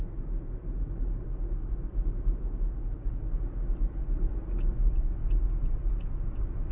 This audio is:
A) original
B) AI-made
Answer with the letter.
A